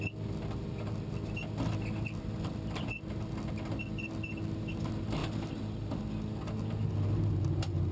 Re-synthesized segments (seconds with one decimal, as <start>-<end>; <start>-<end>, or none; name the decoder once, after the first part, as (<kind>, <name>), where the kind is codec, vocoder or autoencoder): none